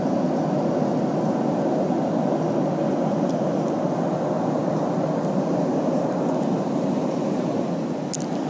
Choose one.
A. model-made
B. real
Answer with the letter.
B